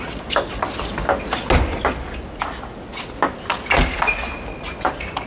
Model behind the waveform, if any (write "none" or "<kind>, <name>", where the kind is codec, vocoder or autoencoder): none